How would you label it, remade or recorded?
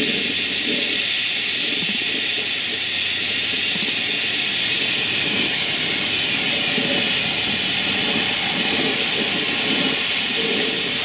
recorded